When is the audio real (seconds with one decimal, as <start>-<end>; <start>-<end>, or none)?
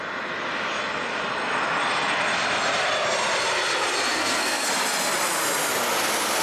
0.0-4.1; 4.7-6.4